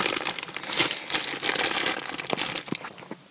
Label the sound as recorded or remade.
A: recorded